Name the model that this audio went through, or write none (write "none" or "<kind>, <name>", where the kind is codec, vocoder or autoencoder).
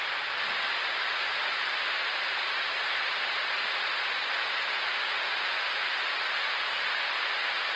none